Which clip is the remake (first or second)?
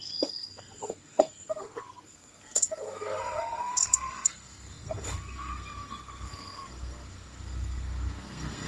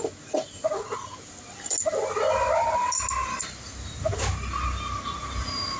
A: first